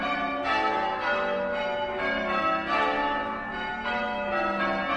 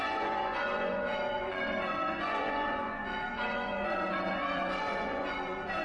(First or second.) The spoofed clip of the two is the second